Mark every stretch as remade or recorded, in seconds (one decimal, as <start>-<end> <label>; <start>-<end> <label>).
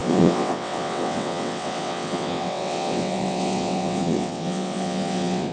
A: 0.0-5.5 remade